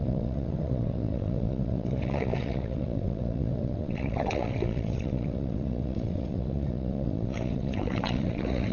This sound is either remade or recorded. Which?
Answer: remade